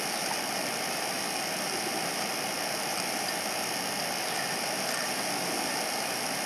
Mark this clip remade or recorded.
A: recorded